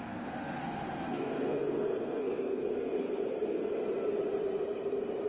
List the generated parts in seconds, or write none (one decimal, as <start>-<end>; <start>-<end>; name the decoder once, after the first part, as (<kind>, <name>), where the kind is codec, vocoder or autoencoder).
0.0-3.6 (codec, SNAC)